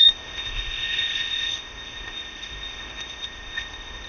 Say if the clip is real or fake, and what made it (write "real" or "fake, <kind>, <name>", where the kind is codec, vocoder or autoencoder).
fake, codec, ZipCodec